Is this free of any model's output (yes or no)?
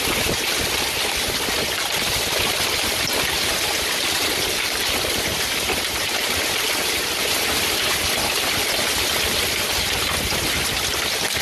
yes